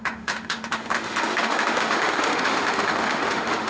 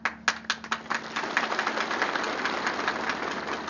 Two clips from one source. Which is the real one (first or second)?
second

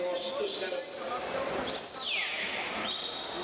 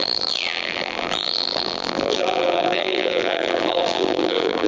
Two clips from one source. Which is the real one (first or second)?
first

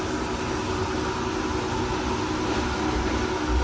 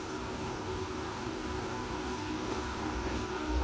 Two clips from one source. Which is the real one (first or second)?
first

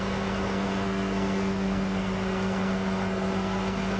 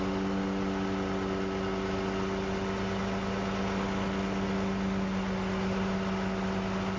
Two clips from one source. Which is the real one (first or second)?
second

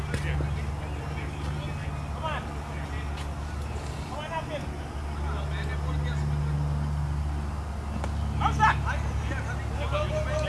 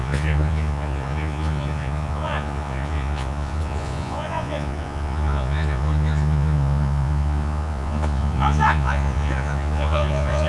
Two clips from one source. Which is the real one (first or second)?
first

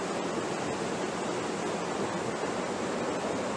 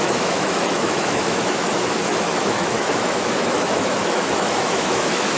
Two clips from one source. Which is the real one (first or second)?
first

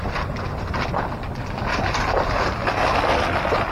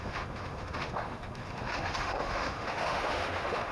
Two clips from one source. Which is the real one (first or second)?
first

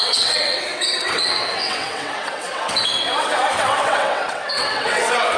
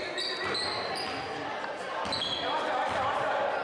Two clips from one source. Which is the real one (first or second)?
second